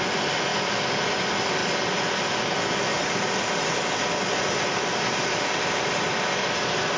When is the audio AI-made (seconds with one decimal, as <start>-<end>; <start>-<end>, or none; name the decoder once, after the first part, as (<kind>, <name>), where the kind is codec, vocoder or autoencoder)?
none

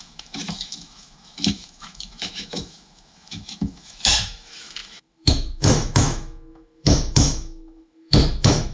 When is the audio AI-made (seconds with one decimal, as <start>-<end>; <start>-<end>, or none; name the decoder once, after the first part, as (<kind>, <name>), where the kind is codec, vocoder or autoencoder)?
0.0-8.7 (autoencoder, DAC-VAE)

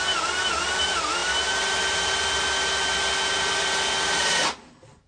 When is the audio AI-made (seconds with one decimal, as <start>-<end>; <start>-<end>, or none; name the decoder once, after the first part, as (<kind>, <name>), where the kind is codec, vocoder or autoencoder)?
none

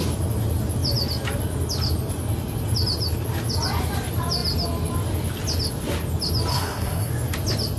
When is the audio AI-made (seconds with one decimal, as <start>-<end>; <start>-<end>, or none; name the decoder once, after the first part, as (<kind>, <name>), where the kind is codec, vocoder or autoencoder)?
6.5-7.1 (codec, SNAC)

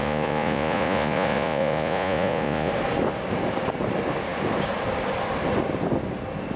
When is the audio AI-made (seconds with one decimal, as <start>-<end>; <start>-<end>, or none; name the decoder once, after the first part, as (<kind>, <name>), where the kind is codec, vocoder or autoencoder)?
0.0-2.7 (vocoder, Vocos)

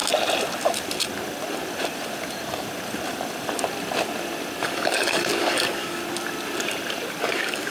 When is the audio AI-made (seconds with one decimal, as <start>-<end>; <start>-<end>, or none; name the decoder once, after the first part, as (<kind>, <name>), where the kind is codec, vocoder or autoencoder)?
4.6-6.0 (codec, DAC); 7.2-7.7

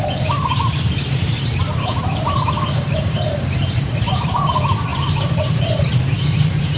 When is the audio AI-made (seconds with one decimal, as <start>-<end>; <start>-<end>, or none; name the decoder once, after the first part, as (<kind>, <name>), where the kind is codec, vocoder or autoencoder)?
0.0-6.8 (vocoder, BigVGAN v2)

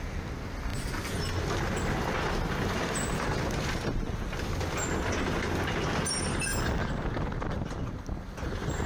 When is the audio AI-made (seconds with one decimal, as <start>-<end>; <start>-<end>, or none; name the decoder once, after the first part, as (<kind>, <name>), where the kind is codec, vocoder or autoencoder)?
none